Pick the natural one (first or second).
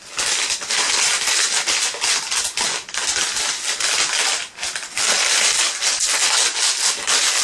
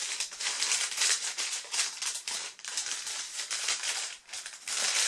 first